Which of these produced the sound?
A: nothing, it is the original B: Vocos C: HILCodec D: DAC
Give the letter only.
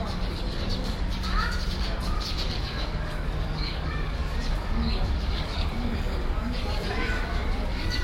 D